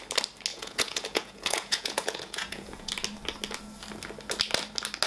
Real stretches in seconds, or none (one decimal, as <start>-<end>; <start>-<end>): 0.0-0.5; 2.9-5.1